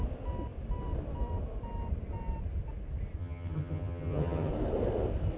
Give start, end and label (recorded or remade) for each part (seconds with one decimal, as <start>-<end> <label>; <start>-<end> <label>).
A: 0.0-3.2 recorded; 3.2-4.5 remade; 4.5-5.4 recorded